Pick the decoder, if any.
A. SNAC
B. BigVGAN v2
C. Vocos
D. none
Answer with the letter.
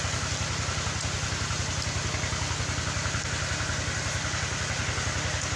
D